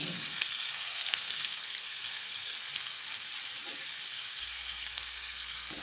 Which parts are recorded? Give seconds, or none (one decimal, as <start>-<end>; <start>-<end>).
3.3-3.9